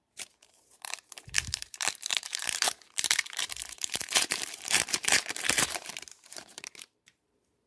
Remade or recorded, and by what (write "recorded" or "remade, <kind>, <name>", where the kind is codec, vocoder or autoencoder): remade, vocoder, BigVGAN v2